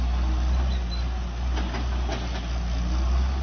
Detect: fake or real real